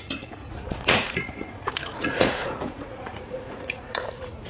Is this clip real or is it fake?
fake